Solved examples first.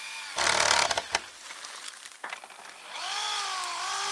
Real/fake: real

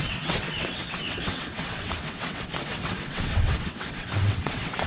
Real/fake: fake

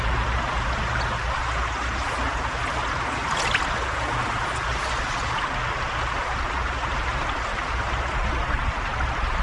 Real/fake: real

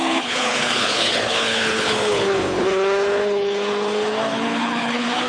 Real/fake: fake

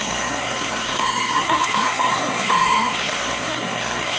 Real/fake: fake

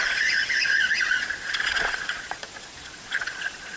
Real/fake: fake